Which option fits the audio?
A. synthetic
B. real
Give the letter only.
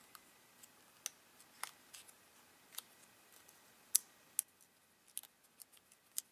B